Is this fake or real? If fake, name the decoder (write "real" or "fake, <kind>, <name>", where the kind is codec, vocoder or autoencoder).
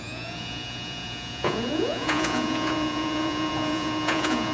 fake, vocoder, Vocos